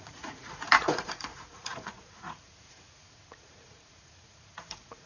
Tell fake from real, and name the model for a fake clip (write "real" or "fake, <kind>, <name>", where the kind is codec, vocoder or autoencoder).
fake, vocoder, Vocos